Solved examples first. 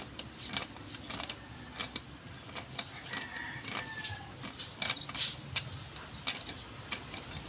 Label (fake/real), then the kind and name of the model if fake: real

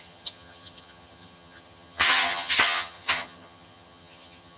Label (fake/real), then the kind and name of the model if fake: fake, vocoder, HiFi-GAN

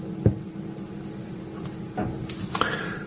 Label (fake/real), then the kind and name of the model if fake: real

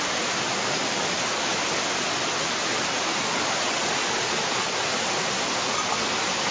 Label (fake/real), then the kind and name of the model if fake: real